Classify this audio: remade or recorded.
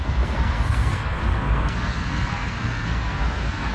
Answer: remade